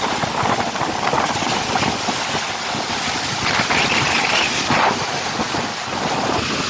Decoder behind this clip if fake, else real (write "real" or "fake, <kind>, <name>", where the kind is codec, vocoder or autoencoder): real